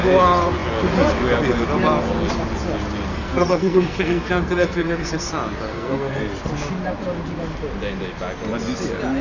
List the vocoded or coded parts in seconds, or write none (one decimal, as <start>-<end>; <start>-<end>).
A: 3.1-5.3; 5.7-6.2

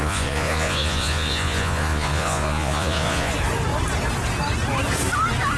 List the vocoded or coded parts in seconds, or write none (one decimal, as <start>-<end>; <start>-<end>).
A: 0.0-3.3

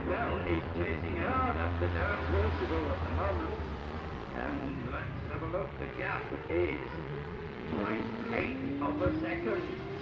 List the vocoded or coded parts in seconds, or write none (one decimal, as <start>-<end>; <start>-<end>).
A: 0.4-1.1; 1.5-2.0; 3.8-4.7; 5.6-8.5